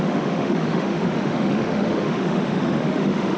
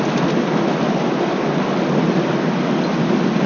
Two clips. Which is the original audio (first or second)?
second